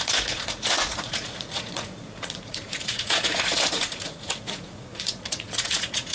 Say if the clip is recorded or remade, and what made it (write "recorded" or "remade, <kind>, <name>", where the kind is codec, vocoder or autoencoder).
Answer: remade, vocoder, Vocos